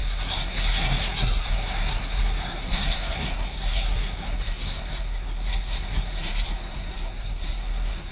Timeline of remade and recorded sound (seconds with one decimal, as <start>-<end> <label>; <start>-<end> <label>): 0.0-8.1 remade